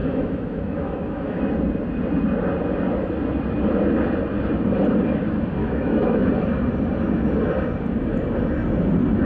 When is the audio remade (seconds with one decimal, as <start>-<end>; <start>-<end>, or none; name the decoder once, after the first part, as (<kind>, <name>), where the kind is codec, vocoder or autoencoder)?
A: 0.0-1.4 (autoencoder, DAC-VAE); 5.6-6.3